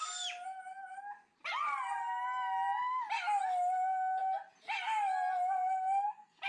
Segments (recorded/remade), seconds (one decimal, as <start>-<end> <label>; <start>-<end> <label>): 0.0-6.5 recorded